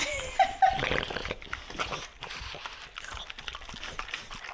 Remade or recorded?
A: recorded